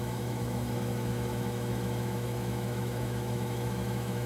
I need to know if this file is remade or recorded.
remade